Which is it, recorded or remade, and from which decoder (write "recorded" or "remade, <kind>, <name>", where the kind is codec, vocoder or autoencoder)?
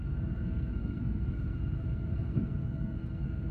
remade, codec, SNAC